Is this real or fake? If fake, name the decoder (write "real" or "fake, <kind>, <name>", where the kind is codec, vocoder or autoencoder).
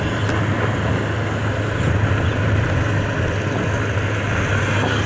real